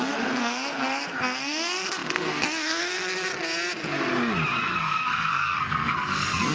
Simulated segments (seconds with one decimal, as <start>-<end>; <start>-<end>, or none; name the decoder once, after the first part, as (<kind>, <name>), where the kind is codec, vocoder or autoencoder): 0.0-3.3 (codec, SNAC); 4.6-6.5